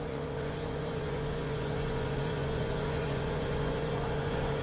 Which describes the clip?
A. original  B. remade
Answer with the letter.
B